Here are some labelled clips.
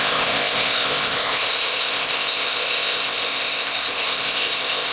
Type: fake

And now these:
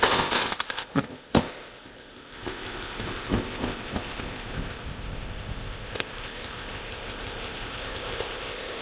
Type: fake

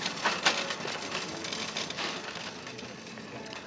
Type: real